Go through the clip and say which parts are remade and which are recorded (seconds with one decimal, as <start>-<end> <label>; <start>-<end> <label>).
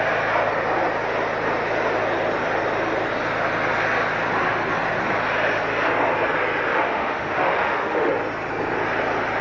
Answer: 0.0-6.7 recorded; 6.7-8.1 remade; 8.1-9.4 recorded